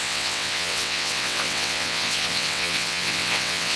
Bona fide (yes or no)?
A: no